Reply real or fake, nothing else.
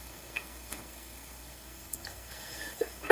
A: fake